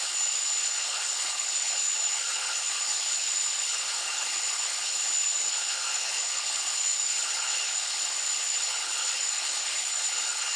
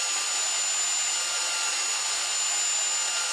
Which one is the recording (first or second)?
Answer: second